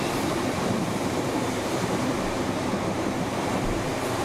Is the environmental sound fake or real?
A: fake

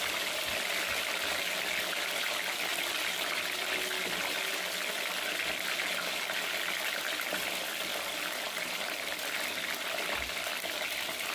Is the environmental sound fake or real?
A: real